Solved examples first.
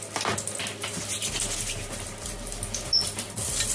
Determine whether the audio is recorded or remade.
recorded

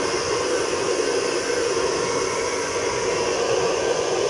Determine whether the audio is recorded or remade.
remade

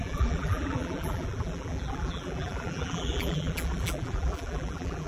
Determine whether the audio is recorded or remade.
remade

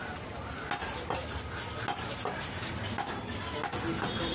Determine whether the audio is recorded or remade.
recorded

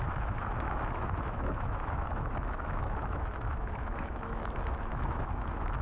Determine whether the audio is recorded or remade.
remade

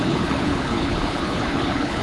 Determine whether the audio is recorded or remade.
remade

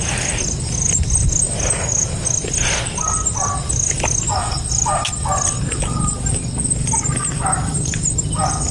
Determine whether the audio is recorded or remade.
recorded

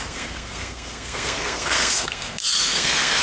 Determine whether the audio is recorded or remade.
remade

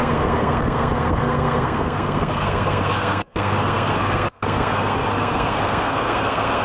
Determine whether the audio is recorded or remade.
remade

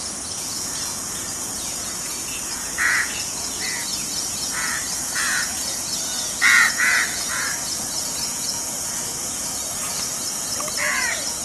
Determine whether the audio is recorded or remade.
remade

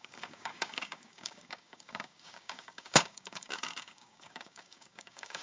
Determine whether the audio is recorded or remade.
remade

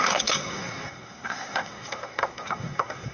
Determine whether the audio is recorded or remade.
remade